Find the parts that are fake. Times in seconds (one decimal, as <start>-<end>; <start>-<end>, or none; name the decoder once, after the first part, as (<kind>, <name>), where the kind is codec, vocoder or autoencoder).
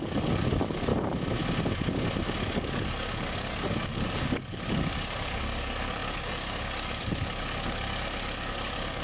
0.0-0.9 (codec, DAC); 2.4-9.0